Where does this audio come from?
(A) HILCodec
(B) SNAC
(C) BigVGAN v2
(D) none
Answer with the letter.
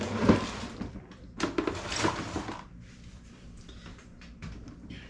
C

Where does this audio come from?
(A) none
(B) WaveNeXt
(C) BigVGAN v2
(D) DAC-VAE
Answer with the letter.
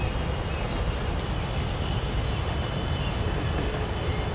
A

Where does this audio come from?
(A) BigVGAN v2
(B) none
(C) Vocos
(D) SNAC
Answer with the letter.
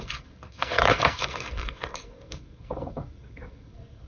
D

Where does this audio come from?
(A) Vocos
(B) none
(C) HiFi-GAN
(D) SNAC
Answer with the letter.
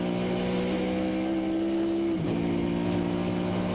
B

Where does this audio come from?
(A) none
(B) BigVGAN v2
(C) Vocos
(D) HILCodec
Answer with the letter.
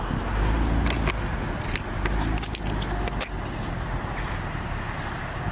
A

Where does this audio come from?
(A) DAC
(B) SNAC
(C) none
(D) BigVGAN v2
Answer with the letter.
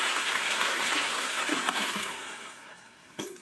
B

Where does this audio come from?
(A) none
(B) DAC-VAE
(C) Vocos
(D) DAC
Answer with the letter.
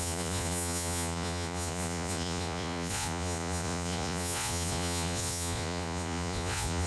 C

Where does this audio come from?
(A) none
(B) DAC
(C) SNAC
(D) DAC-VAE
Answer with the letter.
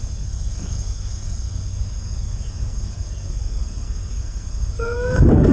C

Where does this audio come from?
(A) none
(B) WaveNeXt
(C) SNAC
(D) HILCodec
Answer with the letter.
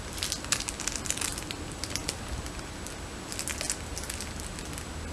A